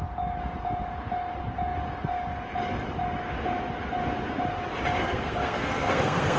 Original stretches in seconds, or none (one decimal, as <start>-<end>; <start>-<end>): 0.0-5.0